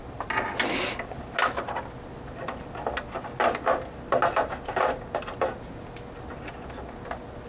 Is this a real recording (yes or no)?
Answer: yes